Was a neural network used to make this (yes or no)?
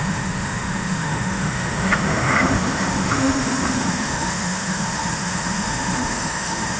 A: yes